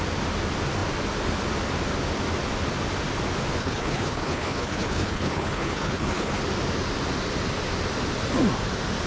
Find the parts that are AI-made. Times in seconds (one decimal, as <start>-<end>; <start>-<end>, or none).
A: 3.6-6.4